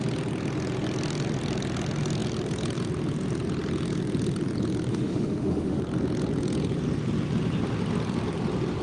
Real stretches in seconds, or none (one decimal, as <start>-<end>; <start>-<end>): 0.0-4.9; 5.8-8.8